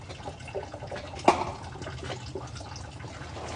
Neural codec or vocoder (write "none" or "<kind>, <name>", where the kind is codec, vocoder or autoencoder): none